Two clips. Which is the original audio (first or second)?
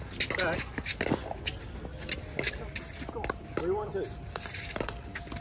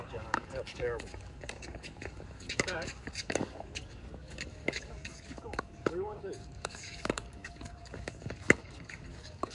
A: first